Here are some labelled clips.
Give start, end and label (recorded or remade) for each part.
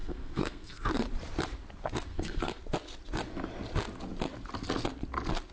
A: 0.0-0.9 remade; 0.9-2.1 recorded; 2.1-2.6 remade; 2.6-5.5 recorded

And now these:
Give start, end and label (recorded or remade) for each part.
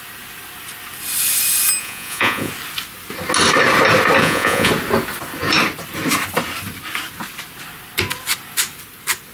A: 0.0-1.8 recorded; 1.8-2.5 remade; 2.5-4.2 recorded; 4.2-4.7 remade; 4.7-9.3 recorded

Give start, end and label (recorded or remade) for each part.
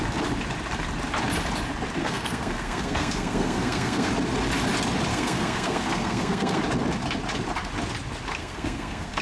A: 0.0-2.0 recorded; 2.0-4.1 remade; 4.1-5.1 recorded; 5.1-6.6 remade; 6.6-8.4 recorded; 8.4-9.2 remade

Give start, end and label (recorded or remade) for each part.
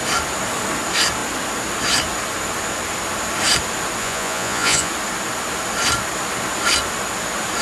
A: 0.0-4.0 recorded; 4.0-4.9 remade; 4.9-7.6 recorded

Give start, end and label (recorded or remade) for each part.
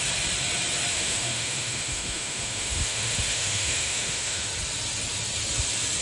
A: 0.0-0.9 recorded; 0.9-4.5 remade; 4.5-6.0 recorded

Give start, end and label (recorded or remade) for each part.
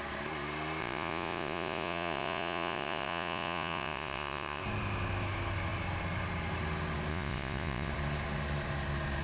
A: 0.0-0.8 recorded; 0.8-4.6 remade; 4.6-7.1 recorded; 7.1-7.9 remade; 7.9-9.2 recorded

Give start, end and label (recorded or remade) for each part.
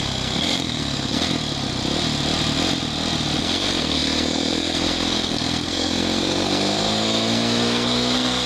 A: 0.0-1.3 remade; 1.3-3.4 recorded; 3.4-8.5 remade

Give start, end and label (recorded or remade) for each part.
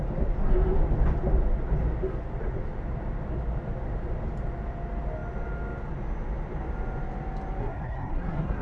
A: 0.0-7.6 recorded; 7.6-8.6 remade